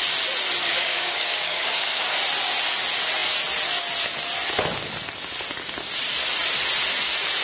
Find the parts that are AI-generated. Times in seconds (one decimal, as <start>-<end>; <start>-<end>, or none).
0.6-2.0